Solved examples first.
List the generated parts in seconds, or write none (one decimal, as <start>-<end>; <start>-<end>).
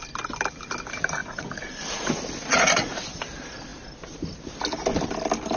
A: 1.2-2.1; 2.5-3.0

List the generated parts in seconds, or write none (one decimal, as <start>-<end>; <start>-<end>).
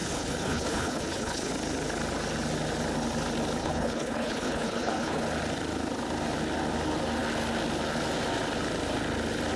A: 0.0-1.5; 3.6-5.2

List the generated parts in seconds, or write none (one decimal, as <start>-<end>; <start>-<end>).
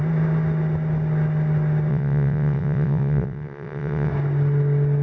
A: 1.9-4.1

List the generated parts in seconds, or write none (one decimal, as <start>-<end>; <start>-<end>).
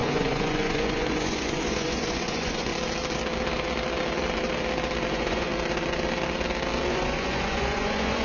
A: 0.0-2.7; 5.1-5.5; 6.9-8.2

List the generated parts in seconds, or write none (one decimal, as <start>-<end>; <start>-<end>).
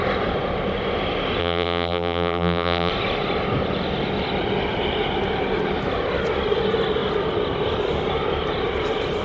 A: 1.4-2.9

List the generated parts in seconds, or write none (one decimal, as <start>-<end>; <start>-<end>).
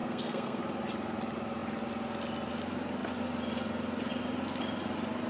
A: 0.0-0.6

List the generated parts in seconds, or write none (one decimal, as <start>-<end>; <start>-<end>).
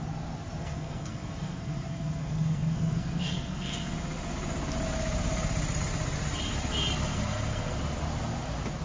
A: 0.6-3.9; 7.1-7.8